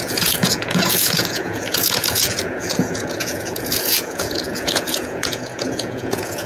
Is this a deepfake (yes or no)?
yes